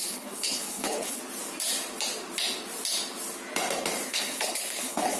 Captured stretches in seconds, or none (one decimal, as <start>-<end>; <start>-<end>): 1.2-4.1